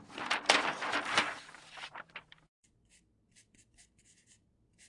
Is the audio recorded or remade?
remade